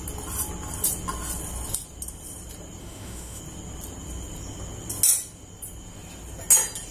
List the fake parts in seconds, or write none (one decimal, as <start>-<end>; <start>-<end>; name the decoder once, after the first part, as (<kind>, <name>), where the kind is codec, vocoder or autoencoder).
2.8-3.4 (autoencoder, DAC-VAE)